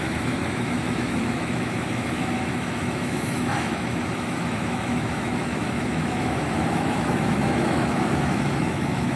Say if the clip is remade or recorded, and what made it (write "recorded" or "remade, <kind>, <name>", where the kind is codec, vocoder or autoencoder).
remade, autoencoder, DAC-VAE